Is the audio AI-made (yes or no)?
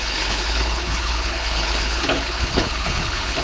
yes